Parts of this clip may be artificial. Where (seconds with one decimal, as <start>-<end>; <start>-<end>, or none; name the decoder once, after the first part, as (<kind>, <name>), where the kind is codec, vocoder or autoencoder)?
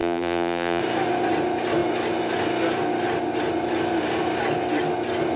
0.0-0.8 (vocoder, BigVGAN v2)